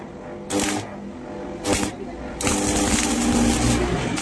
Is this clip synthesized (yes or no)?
no